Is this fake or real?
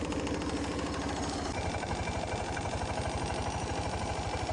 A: real